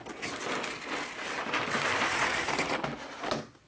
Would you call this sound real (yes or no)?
yes